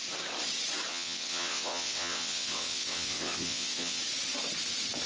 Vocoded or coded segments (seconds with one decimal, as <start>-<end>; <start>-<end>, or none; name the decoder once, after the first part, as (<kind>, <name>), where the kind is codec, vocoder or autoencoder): 0.9-4.0 (vocoder, WaveNeXt)